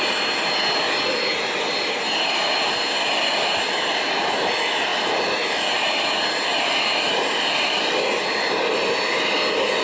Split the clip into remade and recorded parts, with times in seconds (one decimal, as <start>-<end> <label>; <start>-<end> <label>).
0.0-9.8 recorded